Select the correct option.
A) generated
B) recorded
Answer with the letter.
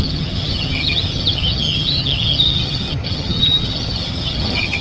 A